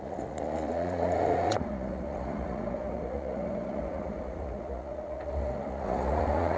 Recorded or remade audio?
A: remade